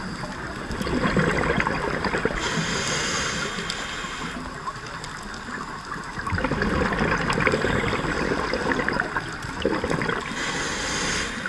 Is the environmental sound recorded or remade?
recorded